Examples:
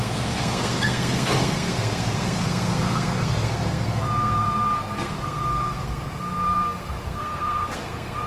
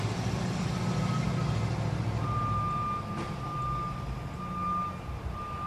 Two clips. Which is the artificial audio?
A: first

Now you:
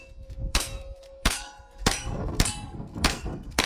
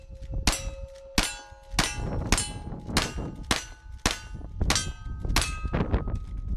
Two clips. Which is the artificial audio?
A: first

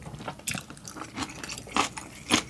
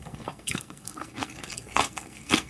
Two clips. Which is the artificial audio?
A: second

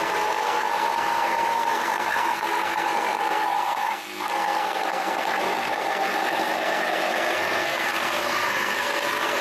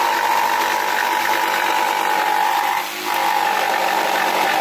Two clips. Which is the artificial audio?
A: first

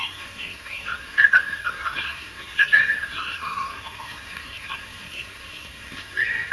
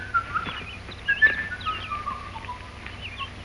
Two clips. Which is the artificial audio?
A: first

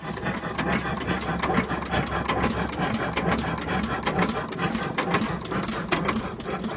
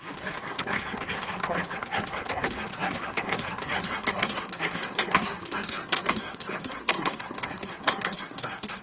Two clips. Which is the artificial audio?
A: second